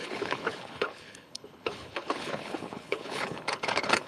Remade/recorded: remade